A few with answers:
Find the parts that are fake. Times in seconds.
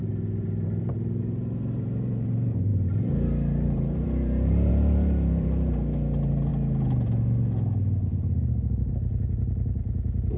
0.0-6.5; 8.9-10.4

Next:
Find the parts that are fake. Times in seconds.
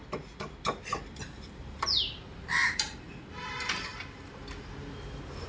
0.0-1.5; 2.3-3.1